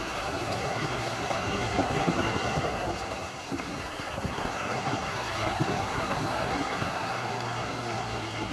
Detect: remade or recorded remade